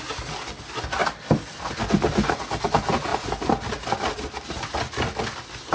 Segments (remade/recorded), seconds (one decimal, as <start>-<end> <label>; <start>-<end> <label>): 0.0-5.7 recorded